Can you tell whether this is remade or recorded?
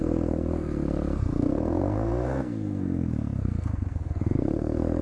remade